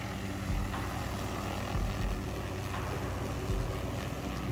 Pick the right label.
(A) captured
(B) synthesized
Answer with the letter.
A